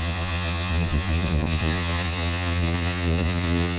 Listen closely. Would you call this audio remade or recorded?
remade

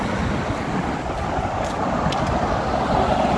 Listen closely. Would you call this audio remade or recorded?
recorded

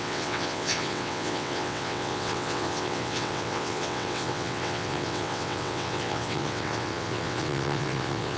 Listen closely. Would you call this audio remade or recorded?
remade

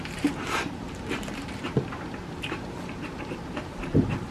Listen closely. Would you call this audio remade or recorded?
remade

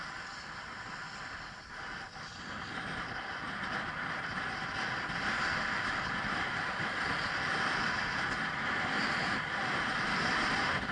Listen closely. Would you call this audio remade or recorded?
recorded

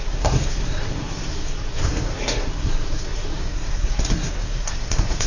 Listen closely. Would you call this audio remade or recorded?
remade